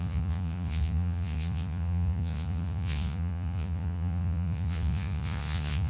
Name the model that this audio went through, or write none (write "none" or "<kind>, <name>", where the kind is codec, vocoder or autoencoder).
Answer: vocoder, Vocos